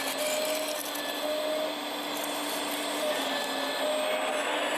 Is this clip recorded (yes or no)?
yes